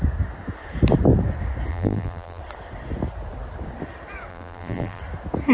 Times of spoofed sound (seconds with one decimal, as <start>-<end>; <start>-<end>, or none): 1.7-2.4; 4.3-5.0